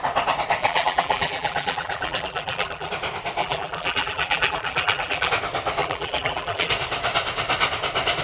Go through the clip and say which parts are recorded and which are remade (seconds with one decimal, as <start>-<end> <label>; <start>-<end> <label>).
0.0-0.6 recorded; 0.6-2.9 remade; 2.9-3.4 recorded; 3.4-5.3 remade; 5.3-5.8 recorded; 5.8-6.7 remade; 6.7-8.2 recorded